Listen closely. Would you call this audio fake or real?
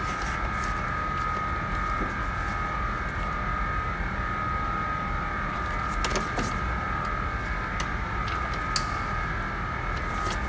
real